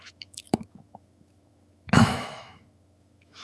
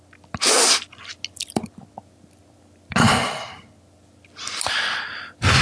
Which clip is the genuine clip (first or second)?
second